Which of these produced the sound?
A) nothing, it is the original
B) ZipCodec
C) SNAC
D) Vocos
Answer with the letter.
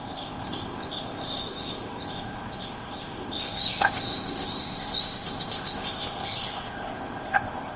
B